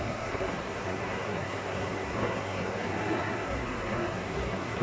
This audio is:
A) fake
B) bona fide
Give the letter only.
A